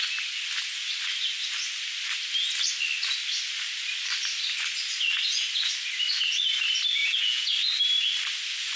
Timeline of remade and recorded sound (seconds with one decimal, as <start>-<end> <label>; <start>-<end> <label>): 0.0-7.0 recorded; 7.0-7.5 remade; 7.5-8.8 recorded